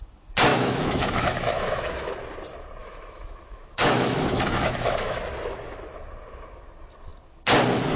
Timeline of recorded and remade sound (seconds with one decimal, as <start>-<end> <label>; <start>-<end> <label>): 0.0-0.5 recorded; 0.5-2.1 remade; 2.1-2.8 recorded; 2.8-5.2 remade; 5.2-8.0 recorded